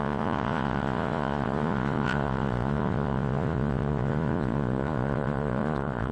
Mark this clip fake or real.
fake